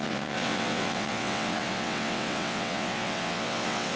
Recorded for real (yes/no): no